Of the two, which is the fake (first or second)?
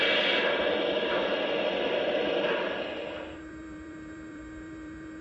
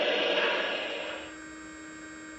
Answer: first